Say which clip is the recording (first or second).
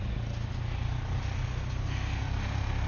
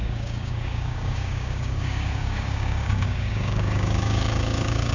first